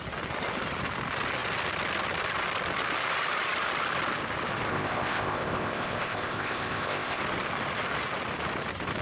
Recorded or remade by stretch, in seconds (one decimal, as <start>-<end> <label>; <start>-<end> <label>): 0.0-4.7 recorded; 4.7-7.2 remade; 7.2-9.0 recorded